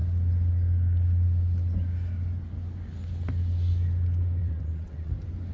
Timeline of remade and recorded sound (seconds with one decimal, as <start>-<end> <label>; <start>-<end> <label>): 0.0-4.4 recorded; 4.4-5.1 remade; 5.1-5.5 recorded